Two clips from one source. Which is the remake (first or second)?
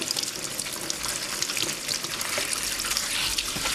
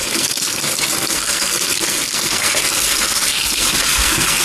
second